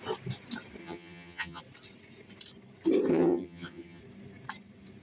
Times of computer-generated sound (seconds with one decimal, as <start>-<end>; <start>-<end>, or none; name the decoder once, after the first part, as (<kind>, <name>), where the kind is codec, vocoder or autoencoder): 0.8-1.6 (vocoder, HiFi-GAN); 3.1-4.0

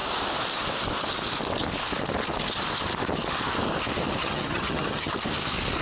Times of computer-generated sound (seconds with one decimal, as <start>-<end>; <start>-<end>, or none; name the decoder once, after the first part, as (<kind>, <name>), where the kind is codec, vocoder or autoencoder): 4.2-5.1 (vocoder, HiFi-GAN)

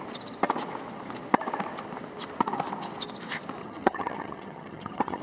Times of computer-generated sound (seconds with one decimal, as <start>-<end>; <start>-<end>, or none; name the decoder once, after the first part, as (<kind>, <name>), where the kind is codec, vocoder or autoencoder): 3.6-5.2 (vocoder, HiFi-GAN)

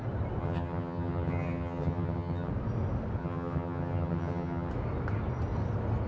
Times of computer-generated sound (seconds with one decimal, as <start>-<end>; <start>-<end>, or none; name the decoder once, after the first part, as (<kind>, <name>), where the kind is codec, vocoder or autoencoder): 0.4-2.5 (vocoder, HiFi-GAN); 3.2-4.7

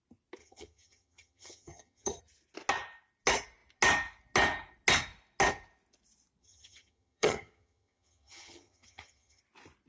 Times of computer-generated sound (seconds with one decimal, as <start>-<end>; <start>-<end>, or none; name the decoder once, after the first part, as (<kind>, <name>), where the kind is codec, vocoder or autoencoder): 0.4-2.2 (vocoder, HiFi-GAN); 6.4-9.4